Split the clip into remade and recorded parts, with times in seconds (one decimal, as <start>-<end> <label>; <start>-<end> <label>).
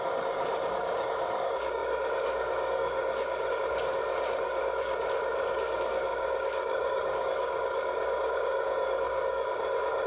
0.0-10.1 remade